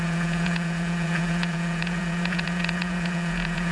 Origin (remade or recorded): remade